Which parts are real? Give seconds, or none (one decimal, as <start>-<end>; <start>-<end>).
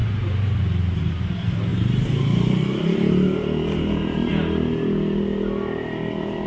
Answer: 0.6-1.7; 4.3-6.5